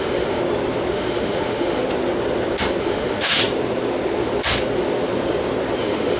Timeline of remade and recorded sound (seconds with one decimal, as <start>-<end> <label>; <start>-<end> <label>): 0.0-0.4 remade; 0.4-0.9 recorded; 0.9-1.8 remade; 1.8-2.8 recorded; 2.8-3.4 remade; 3.4-5.8 recorded; 5.8-6.2 remade